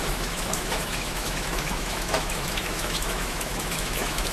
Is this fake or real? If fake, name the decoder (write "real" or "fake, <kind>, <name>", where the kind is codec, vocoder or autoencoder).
fake, autoencoder, DAC-VAE